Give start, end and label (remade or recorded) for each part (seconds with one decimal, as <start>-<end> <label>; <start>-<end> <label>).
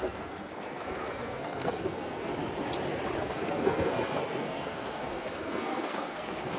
0.0-2.3 remade; 2.3-3.2 recorded; 3.2-6.6 remade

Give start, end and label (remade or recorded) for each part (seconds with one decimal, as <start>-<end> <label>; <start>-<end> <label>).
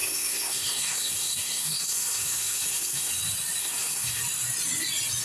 0.0-3.1 remade; 3.1-3.6 recorded; 3.6-4.2 remade; 4.2-5.2 recorded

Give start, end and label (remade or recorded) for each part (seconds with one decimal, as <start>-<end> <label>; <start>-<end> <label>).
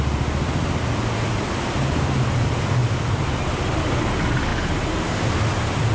0.0-5.9 recorded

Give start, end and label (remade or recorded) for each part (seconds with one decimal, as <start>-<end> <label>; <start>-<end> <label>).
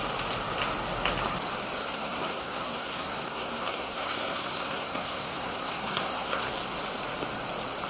0.0-1.8 recorded; 1.8-6.5 remade; 6.5-7.9 recorded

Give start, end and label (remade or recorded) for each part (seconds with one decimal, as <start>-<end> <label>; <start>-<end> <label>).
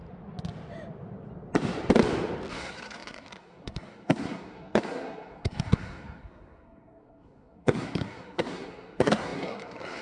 0.0-2.5 recorded; 2.5-10.0 remade